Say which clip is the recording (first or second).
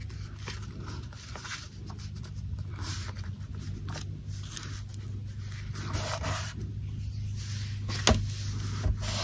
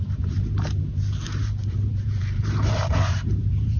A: first